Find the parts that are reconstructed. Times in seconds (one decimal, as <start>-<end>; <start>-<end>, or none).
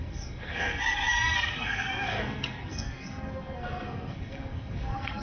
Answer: 0.0-5.2